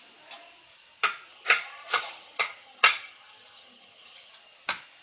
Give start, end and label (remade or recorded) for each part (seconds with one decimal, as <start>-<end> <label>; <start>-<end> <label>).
0.0-1.3 recorded; 1.3-4.3 remade; 4.3-5.0 recorded